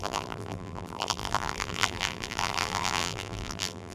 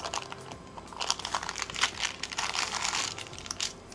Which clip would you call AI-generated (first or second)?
first